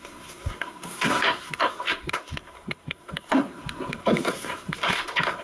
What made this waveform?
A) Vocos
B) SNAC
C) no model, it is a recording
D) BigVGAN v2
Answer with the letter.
B